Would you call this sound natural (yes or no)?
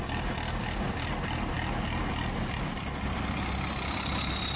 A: yes